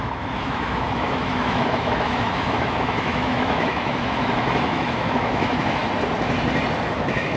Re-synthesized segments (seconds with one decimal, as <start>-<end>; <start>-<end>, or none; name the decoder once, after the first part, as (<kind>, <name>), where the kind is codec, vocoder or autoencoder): 0.0-5.8 (autoencoder, DAC-VAE); 6.9-7.4